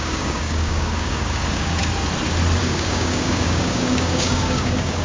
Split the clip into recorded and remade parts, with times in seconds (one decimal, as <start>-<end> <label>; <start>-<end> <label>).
0.0-1.8 remade; 1.8-2.6 recorded; 2.6-5.0 remade